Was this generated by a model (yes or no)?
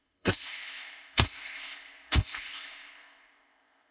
yes